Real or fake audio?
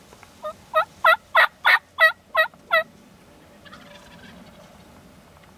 real